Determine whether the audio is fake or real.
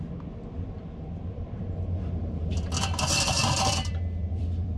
fake